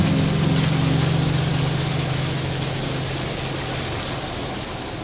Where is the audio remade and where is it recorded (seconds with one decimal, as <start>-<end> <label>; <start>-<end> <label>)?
0.0-5.0 recorded